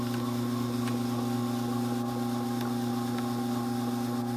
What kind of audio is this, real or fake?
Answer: real